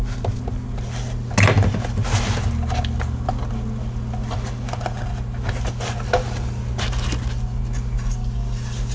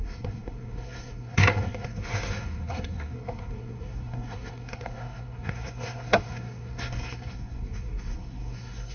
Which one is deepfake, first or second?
second